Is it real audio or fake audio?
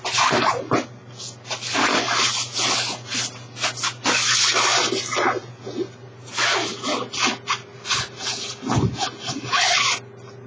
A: real